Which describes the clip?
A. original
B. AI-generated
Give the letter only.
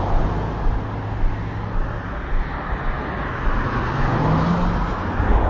A